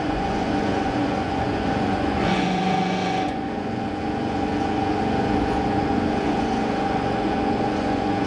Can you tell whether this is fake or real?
fake